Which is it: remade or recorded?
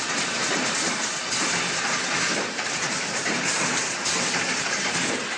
remade